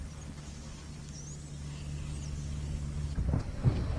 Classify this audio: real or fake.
real